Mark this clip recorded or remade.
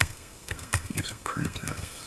remade